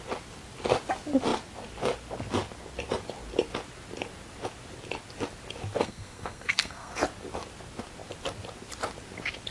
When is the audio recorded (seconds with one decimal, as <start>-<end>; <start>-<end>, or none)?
0.0-5.8; 7.0-9.5